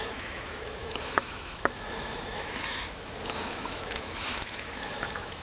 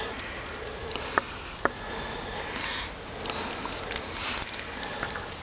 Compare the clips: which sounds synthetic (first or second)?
first